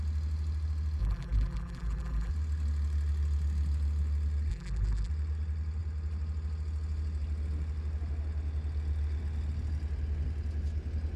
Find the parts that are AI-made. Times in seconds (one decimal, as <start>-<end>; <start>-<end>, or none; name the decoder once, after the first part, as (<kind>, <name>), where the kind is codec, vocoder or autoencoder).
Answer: 1.0-2.3 (vocoder, BigVGAN v2); 4.5-5.1